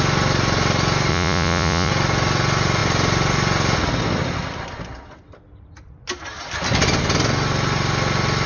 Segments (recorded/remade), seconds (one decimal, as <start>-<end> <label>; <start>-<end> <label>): 0.0-1.1 recorded; 1.1-1.9 remade; 1.9-8.5 recorded